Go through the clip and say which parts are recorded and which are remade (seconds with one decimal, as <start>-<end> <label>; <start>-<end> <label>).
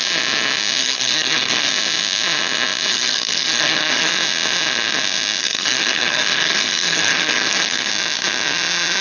0.0-0.8 recorded; 0.8-1.7 remade; 1.7-2.9 recorded; 2.9-4.1 remade; 4.1-5.4 recorded; 5.4-7.9 remade; 7.9-9.0 recorded